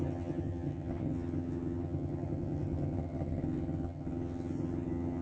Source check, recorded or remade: remade